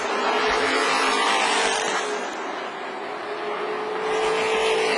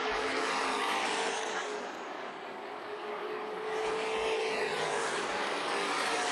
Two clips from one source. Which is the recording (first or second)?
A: first